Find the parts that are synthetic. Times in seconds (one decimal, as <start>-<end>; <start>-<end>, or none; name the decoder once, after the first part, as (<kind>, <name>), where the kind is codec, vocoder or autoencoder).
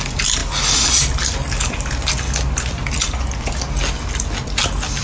none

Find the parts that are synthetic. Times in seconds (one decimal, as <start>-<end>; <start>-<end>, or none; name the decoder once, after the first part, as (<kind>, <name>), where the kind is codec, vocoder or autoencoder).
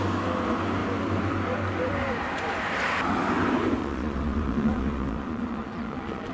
3.8-6.3 (vocoder, Vocos)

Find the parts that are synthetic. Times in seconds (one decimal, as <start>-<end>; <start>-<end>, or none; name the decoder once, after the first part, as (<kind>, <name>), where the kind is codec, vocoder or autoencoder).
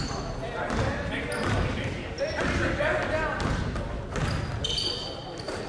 1.7-5.1 (vocoder, BigVGAN v2)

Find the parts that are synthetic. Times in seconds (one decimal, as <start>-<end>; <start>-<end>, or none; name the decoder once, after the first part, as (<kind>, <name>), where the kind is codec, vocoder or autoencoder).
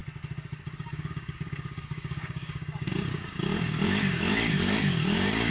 0.8-5.5 (codec, DAC)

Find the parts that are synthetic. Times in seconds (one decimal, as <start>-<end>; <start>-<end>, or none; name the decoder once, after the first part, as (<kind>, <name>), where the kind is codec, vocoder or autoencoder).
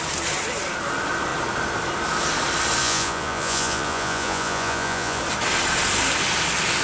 2.8-5.2 (vocoder, Vocos)